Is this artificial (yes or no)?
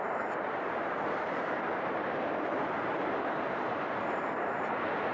yes